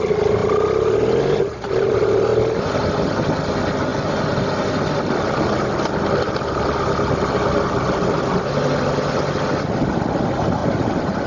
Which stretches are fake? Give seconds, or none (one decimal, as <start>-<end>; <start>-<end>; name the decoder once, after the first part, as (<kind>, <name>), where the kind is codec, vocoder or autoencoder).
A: none